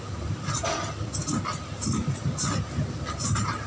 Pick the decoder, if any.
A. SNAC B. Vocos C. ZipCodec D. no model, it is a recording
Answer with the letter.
D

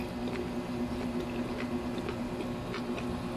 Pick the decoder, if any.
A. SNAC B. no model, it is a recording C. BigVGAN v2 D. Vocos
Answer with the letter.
B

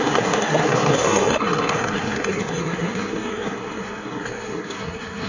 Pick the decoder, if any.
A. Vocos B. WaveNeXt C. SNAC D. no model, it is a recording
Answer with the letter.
C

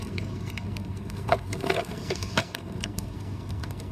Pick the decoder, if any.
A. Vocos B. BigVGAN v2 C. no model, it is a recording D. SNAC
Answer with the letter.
D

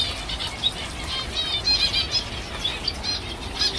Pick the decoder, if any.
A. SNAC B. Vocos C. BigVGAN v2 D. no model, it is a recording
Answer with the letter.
D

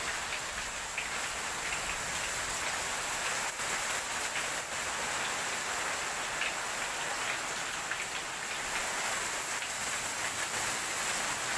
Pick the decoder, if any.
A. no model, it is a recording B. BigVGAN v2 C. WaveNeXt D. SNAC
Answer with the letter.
A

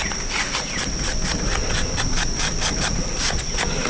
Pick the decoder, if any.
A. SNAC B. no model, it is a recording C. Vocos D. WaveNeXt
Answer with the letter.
B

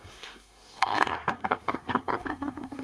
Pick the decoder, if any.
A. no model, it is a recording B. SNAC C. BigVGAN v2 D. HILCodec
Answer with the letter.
B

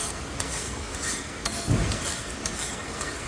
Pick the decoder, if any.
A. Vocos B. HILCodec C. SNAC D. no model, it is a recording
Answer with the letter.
C